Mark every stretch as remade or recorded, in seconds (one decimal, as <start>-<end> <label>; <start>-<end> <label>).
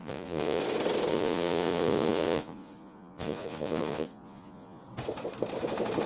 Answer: 0.0-0.6 remade; 0.6-1.1 recorded; 1.1-4.8 remade; 4.8-6.1 recorded